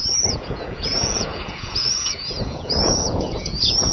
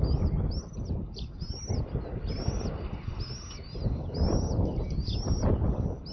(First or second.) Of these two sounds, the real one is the second